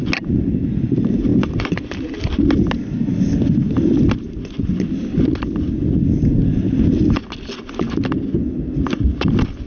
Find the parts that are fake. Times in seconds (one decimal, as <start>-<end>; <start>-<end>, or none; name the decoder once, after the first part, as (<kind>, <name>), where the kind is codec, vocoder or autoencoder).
none